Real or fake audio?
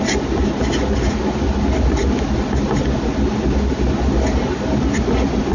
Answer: real